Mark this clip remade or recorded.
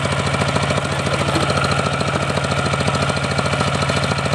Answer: recorded